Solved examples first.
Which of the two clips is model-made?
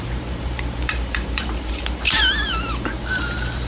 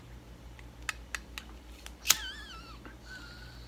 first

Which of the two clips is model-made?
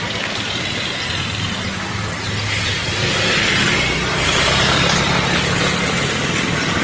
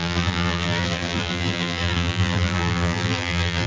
second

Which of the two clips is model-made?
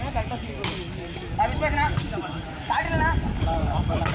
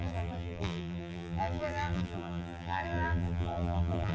second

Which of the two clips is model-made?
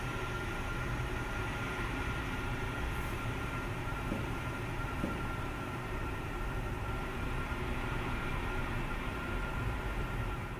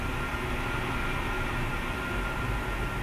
first